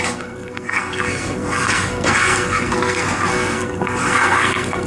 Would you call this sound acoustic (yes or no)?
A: no